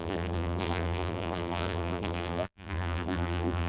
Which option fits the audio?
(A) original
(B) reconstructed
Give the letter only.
B